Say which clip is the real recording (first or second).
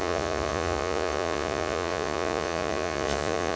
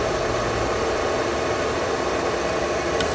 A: second